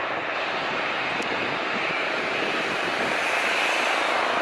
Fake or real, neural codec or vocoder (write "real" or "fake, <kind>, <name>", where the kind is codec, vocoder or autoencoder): real